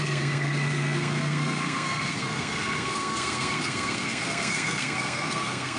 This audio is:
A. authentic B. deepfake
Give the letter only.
B